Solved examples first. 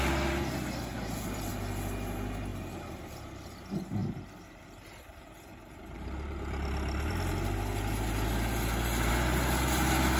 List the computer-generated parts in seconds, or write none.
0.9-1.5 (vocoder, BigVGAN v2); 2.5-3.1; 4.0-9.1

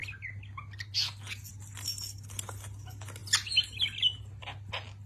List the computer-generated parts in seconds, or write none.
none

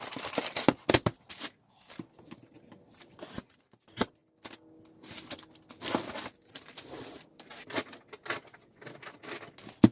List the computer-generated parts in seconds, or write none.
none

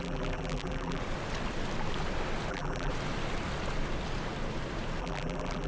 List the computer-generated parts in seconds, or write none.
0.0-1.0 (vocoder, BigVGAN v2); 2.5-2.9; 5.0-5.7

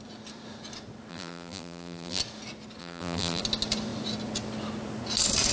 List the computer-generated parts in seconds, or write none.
1.1-2.2 (vocoder, BigVGAN v2); 2.8-3.4

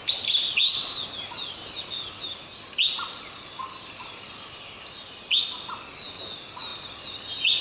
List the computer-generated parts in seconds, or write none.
none

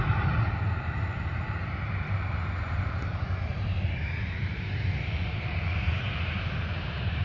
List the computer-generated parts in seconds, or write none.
0.0-3.1 (vocoder, BigVGAN v2); 4.5-7.2

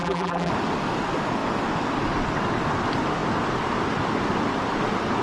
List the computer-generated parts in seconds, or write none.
0.0-0.5 (vocoder, BigVGAN v2)